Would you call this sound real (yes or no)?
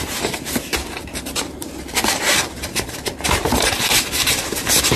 no